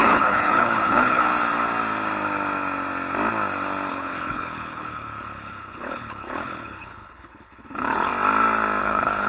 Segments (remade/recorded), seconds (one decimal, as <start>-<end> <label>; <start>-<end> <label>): 0.0-1.2 remade; 1.2-3.9 recorded; 3.9-8.1 remade; 8.1-8.8 recorded; 8.8-9.3 remade